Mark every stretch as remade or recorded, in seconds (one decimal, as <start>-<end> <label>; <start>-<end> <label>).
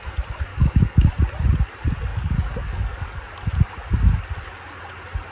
0.0-0.5 recorded; 0.5-1.1 remade; 1.1-2.1 recorded; 2.1-3.2 remade; 3.2-5.3 recorded